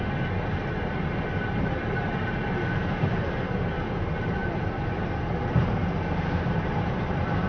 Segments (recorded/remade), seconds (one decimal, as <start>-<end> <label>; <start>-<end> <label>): 0.0-7.5 recorded